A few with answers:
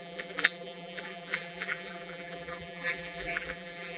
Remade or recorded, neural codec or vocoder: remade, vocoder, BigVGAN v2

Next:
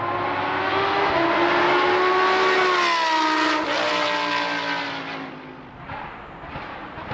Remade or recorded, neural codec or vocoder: recorded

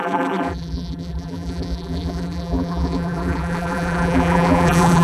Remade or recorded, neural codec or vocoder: remade, vocoder, BigVGAN v2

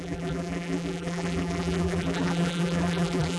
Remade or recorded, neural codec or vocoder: remade, vocoder, BigVGAN v2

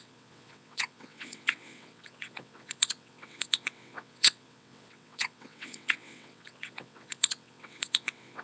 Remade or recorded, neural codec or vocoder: remade, vocoder, WaveNeXt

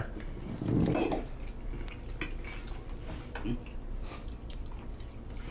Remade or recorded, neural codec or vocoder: recorded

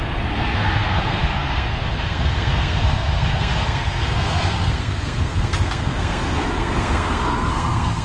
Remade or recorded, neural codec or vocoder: remade, codec, SNAC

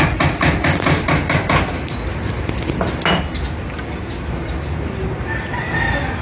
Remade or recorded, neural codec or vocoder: recorded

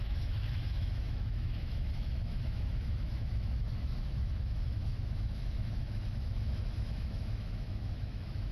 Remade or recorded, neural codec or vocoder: remade, autoencoder, DAC-VAE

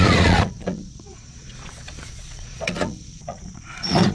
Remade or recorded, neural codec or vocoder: remade, vocoder, Vocos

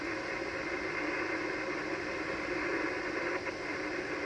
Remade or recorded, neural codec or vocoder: recorded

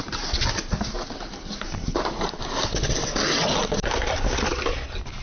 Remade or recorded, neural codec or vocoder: recorded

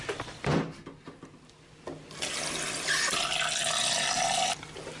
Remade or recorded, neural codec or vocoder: recorded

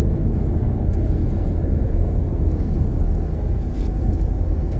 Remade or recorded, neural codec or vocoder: remade, codec, SNAC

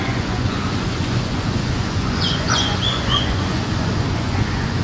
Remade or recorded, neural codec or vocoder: remade, vocoder, Vocos